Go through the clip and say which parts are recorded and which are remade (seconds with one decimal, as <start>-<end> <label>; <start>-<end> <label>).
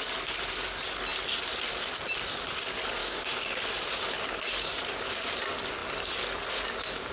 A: 0.0-3.0 recorded; 3.0-3.6 remade; 3.6-7.1 recorded